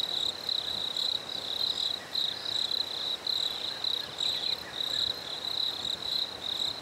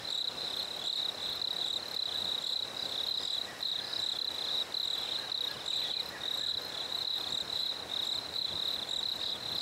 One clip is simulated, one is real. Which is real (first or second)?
second